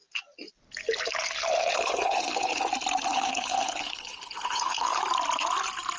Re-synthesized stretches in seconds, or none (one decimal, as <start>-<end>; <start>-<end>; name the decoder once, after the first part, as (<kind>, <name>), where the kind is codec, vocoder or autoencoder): 1.7-2.6 (codec, HILCodec); 3.1-5.0